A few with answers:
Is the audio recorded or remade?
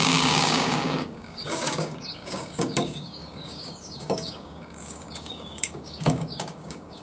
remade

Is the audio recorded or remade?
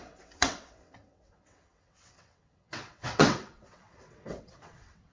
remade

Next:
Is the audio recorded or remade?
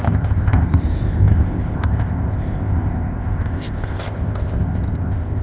remade